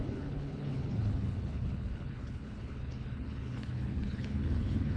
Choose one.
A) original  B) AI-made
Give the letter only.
B